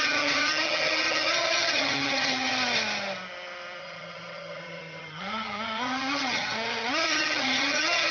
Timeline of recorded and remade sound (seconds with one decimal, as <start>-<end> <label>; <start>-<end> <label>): 0.0-2.5 remade; 2.5-3.8 recorded; 3.8-8.1 remade